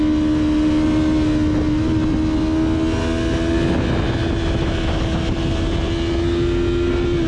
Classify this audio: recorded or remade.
recorded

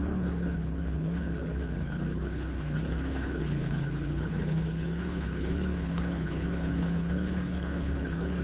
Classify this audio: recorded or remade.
remade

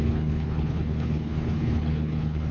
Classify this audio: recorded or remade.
remade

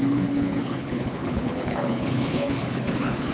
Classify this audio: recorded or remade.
remade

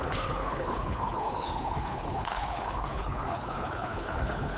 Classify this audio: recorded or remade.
remade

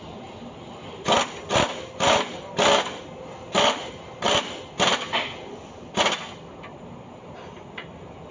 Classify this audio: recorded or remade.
recorded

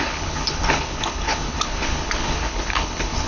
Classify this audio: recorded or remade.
remade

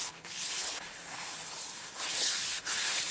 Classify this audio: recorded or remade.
remade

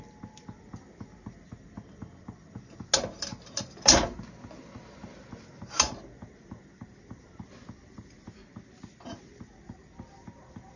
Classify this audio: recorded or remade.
recorded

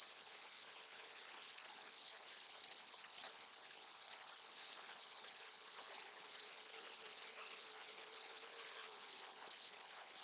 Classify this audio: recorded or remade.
remade